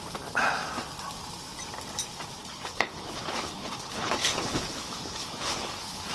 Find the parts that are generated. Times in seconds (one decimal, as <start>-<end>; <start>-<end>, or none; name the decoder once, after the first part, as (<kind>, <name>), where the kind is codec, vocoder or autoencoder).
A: 2.4-6.1 (codec, HILCodec)